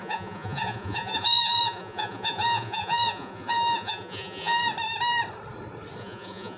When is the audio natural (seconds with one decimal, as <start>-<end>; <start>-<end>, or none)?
4.6-6.0